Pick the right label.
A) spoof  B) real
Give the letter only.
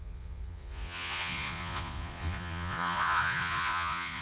A